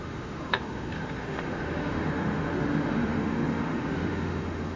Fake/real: fake